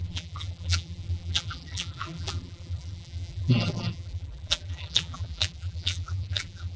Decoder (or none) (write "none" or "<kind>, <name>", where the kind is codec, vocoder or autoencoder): vocoder, BigVGAN v2